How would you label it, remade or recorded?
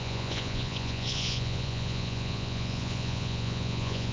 remade